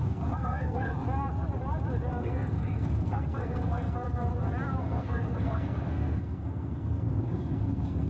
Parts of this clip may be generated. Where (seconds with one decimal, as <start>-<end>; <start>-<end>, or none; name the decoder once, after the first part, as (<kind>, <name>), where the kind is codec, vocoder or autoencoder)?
0.0-0.9 (codec, SNAC); 2.1-4.3; 4.8-8.1